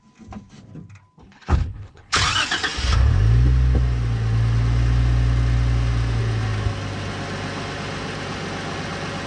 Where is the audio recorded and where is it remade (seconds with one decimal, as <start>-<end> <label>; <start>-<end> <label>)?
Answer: 0.0-1.2 recorded; 1.2-2.2 remade; 2.2-9.3 recorded